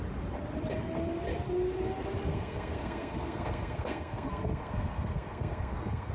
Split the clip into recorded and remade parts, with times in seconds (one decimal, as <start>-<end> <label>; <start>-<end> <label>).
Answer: 0.0-2.3 recorded; 2.3-6.1 remade